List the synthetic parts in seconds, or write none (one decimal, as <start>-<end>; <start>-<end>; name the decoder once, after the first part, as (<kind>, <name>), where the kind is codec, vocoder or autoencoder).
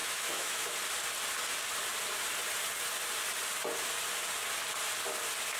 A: 0.0-0.7 (autoencoder, DAC-VAE)